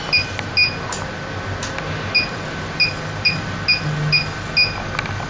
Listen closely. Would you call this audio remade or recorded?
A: recorded